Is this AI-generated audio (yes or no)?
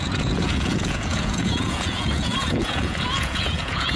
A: yes